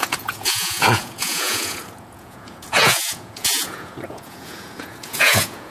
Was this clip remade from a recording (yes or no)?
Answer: yes